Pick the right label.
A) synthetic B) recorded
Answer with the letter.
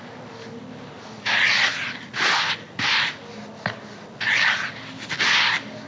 B